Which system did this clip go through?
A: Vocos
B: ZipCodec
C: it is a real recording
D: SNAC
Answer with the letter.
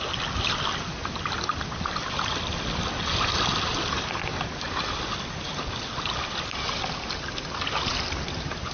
C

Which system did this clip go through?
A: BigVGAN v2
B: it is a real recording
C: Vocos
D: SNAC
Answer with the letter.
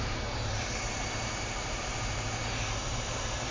A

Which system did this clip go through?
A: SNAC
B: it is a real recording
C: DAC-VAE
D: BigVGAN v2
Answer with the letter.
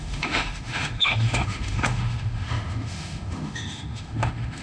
C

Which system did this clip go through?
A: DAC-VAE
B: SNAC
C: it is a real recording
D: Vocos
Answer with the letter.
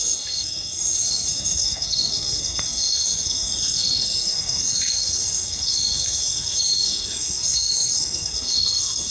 B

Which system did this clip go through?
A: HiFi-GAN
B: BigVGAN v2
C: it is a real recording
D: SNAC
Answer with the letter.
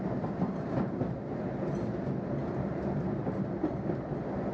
C